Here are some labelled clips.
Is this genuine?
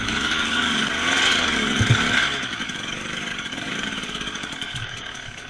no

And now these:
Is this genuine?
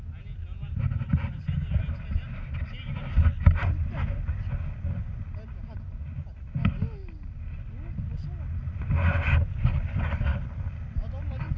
yes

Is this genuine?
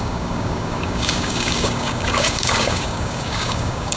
no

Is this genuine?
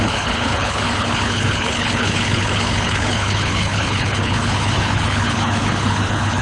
no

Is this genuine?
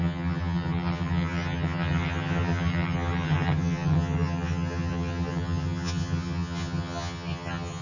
no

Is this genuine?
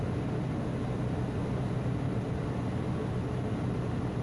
yes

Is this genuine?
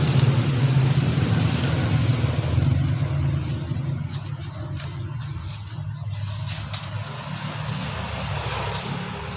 yes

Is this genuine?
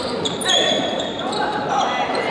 no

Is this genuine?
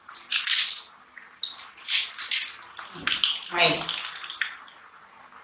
yes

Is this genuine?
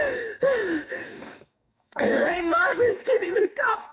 no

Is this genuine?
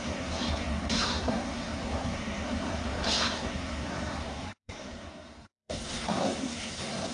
no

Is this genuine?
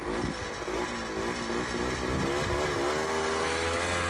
yes